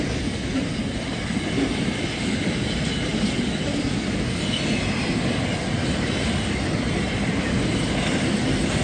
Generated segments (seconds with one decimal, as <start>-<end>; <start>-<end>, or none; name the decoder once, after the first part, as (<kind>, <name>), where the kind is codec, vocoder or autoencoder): none